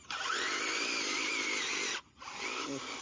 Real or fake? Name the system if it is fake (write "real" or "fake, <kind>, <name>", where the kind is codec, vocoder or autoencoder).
real